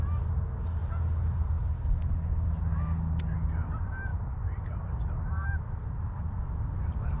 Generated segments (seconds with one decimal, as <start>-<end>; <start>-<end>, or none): none